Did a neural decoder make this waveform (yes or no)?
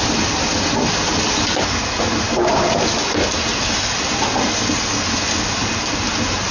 no